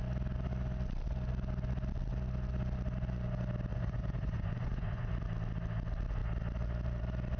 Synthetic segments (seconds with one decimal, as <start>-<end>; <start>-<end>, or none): 3.7-5.1